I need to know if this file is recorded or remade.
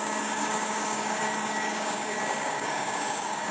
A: remade